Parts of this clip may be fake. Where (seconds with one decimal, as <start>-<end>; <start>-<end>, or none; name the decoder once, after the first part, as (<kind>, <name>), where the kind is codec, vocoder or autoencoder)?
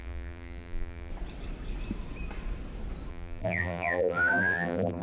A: 0.0-1.1 (vocoder, BigVGAN v2); 3.1-5.0